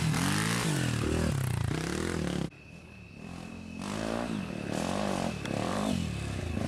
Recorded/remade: recorded